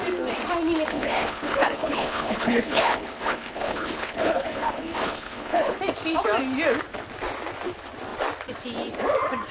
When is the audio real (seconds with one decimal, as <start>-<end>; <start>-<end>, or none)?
0.0-0.9; 5.8-9.5